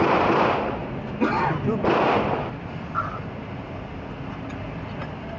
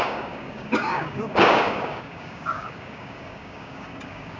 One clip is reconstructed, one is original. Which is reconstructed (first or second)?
second